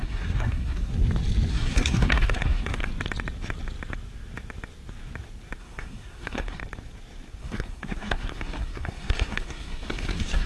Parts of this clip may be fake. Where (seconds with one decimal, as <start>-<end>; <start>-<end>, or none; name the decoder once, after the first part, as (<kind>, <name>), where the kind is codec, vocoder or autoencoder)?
0.0-0.9 (codec, SNAC); 1.5-2.9; 5.6-6.6; 7.4-10.5